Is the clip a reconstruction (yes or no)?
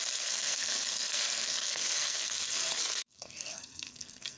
yes